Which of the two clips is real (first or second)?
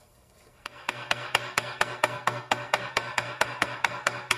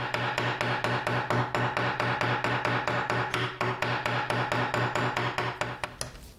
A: second